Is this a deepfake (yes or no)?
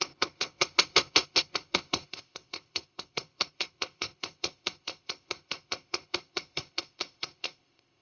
yes